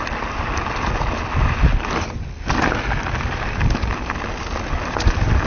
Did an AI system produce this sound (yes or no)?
no